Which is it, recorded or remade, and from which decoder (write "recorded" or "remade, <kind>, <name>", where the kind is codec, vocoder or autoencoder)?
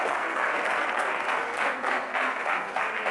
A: remade, codec, SNAC